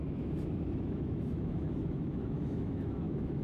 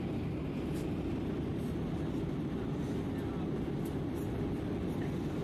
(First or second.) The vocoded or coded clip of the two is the first